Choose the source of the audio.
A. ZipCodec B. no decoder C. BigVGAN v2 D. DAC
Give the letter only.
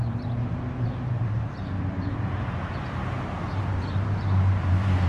C